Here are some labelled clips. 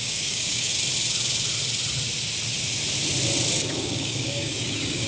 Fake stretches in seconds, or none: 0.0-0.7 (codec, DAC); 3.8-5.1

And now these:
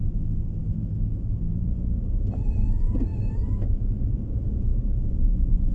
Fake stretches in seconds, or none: 0.6-1.4 (autoencoder, DAC-VAE); 3.1-4.0